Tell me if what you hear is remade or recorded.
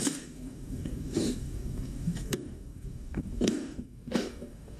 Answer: remade